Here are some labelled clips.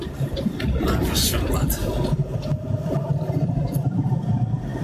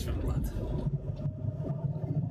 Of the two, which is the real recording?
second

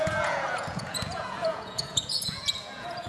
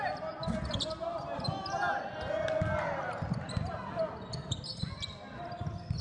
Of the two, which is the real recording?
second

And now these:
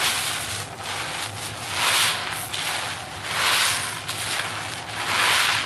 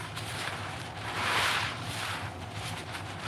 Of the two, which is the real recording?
first